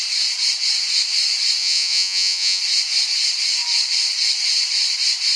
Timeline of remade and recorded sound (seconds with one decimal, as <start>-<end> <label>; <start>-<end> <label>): 0.0-1.6 recorded; 1.6-2.6 remade; 2.6-5.4 recorded